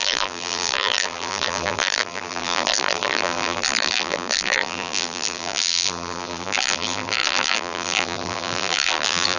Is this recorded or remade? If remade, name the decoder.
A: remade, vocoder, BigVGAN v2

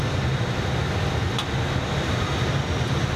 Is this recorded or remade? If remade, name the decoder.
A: recorded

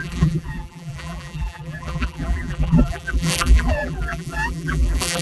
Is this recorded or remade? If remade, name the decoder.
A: remade, vocoder, BigVGAN v2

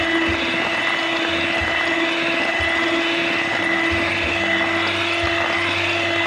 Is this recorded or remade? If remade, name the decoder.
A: recorded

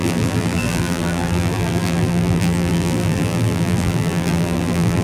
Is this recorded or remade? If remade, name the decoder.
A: remade, vocoder, BigVGAN v2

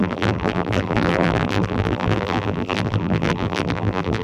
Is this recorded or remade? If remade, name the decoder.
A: remade, vocoder, BigVGAN v2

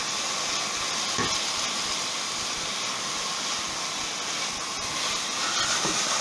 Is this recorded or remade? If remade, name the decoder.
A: recorded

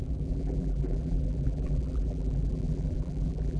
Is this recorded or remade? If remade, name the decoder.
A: remade, vocoder, BigVGAN v2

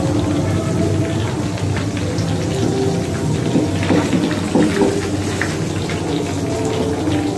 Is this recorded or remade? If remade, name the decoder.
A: recorded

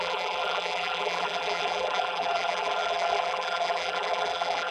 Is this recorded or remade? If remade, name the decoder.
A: remade, vocoder, BigVGAN v2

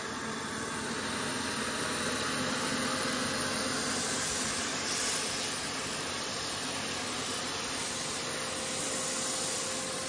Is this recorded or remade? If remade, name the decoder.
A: recorded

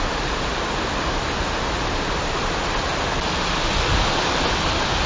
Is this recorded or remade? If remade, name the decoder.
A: remade, vocoder, BigVGAN v2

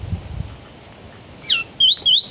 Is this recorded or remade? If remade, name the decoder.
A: recorded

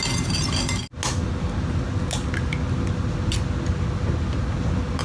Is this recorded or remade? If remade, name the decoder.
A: recorded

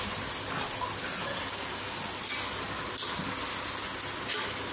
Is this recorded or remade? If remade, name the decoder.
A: recorded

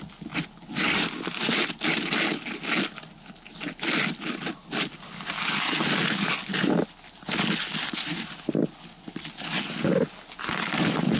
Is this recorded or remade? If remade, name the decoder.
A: recorded